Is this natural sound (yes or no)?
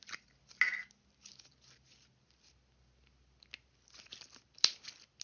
yes